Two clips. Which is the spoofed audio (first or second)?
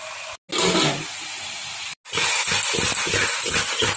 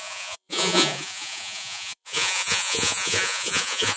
second